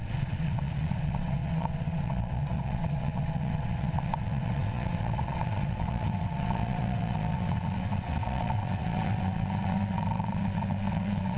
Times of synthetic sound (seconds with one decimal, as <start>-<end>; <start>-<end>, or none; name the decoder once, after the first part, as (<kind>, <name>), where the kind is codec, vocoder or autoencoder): 0.0-11.4 (vocoder, WaveNeXt)